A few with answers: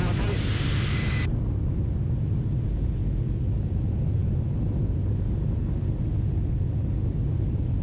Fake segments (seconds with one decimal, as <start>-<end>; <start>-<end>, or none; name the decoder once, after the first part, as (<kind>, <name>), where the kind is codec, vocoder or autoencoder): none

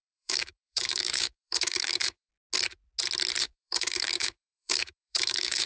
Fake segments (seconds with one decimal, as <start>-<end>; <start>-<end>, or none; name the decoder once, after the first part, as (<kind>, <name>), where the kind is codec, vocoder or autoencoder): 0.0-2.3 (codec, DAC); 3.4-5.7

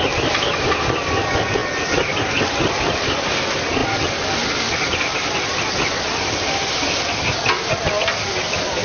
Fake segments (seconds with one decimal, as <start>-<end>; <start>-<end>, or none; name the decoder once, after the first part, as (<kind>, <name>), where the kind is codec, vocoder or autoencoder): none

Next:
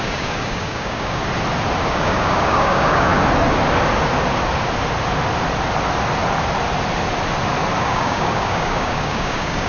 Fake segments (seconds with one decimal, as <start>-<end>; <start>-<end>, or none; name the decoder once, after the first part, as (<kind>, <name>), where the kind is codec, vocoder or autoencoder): 0.0-1.2 (codec, DAC); 1.9-3.1; 7.8-9.7

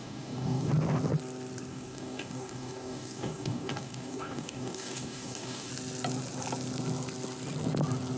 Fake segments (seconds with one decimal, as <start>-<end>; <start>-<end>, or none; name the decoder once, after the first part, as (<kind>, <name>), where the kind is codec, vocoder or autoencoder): 0.0-0.7 (codec, DAC); 1.7-5.7

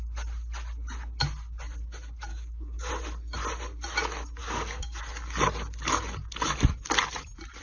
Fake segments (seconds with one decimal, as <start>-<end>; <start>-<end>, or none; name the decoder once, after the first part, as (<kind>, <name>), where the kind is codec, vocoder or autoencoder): 2.3-2.9 (codec, DAC); 4.4-5.0

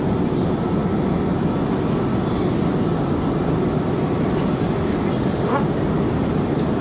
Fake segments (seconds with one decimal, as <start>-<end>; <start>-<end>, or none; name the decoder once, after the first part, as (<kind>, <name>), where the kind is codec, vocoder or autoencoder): none

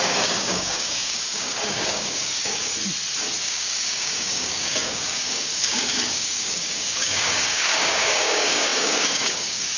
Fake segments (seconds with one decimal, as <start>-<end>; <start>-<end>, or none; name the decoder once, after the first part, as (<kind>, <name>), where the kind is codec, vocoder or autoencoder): 0.0-2.7 (codec, DAC); 3.4-9.8